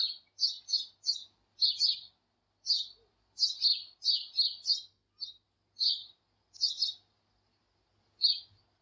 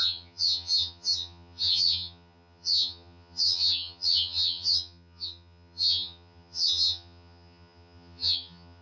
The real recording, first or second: first